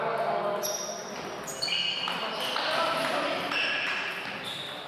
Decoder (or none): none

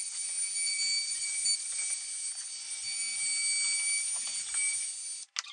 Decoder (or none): none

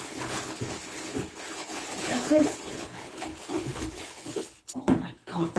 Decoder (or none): codec, HILCodec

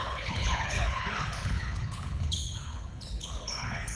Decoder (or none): codec, HILCodec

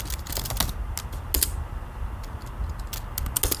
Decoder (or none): none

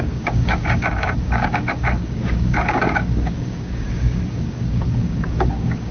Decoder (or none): codec, DAC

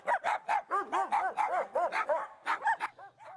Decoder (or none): none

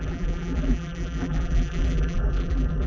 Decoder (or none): vocoder, BigVGAN v2